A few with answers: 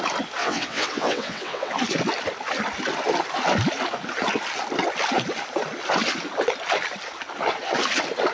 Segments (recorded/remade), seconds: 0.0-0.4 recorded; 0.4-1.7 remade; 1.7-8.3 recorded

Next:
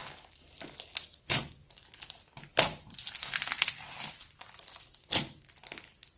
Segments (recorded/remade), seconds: 0.0-2.5 recorded; 2.5-6.2 remade

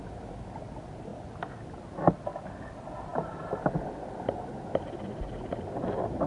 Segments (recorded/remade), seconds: 0.0-6.3 recorded

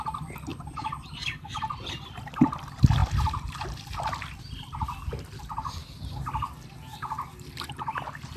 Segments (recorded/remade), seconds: 0.0-8.4 recorded

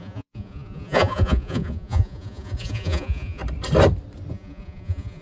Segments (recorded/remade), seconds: 0.0-3.4 remade; 3.4-4.3 recorded; 4.3-5.2 remade